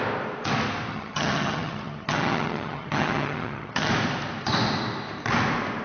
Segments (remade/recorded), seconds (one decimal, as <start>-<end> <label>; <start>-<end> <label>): 0.0-0.9 recorded; 0.9-3.9 remade; 3.9-5.8 recorded